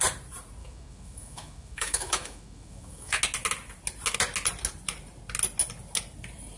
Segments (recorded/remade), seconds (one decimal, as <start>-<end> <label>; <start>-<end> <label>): 0.0-0.6 recorded; 0.6-3.2 remade; 3.2-6.6 recorded